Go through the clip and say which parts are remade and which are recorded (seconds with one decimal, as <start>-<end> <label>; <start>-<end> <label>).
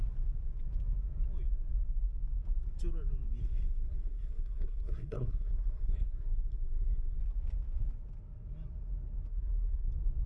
0.0-3.4 recorded; 3.4-7.2 remade; 7.2-9.3 recorded; 9.3-9.9 remade; 9.9-10.3 recorded